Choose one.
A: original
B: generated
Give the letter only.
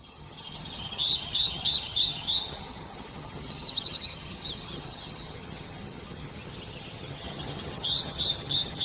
B